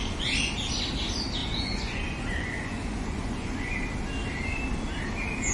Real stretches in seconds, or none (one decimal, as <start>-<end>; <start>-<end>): 0.0-1.4; 3.7-5.5